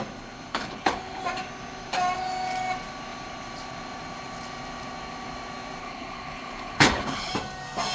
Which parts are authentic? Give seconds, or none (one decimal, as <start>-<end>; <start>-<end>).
0.0-0.5; 1.2-5.8; 7.3-7.9